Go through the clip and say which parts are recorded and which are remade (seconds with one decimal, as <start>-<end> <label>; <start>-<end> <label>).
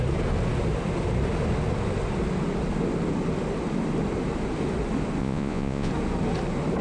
0.0-5.2 recorded; 5.2-5.9 remade; 5.9-6.8 recorded